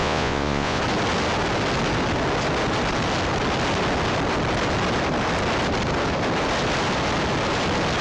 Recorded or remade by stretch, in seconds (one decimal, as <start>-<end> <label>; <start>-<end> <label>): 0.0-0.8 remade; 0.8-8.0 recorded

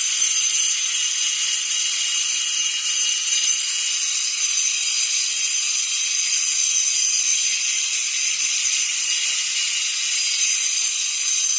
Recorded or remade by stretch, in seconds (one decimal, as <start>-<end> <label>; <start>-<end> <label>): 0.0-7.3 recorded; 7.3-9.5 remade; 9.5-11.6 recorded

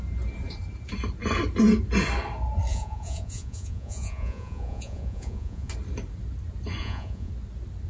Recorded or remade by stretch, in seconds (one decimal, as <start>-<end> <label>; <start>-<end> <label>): 0.0-2.7 recorded; 2.7-5.7 remade; 5.7-6.8 recorded; 6.8-7.3 remade; 7.3-7.9 recorded

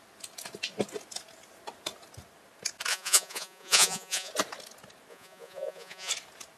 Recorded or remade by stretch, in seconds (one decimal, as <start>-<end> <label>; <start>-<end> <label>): 0.0-2.9 recorded; 2.9-4.3 remade; 4.3-5.1 recorded; 5.1-6.1 remade; 6.1-6.6 recorded